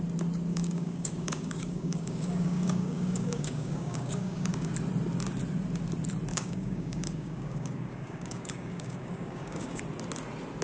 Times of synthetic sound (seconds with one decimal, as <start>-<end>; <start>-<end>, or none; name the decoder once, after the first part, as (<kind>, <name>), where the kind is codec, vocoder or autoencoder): 0.5-4.7 (codec, DAC); 6.3-9.8